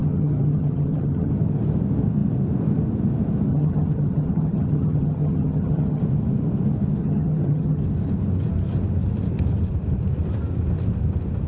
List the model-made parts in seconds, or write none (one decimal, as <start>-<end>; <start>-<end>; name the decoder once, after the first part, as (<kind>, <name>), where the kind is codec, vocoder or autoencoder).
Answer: 0.0-1.3 (vocoder, HiFi-GAN); 3.5-6.0; 7.0-7.8